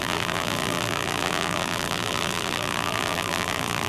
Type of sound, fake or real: fake